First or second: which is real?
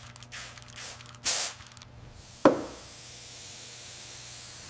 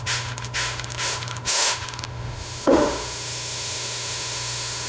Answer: first